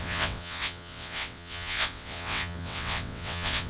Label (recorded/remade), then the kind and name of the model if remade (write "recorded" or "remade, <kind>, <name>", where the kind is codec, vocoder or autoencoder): remade, vocoder, WaveNeXt